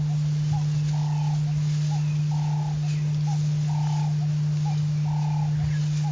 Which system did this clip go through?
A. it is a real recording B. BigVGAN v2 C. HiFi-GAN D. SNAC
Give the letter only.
A